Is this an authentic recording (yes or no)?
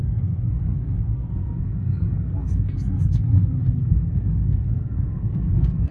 no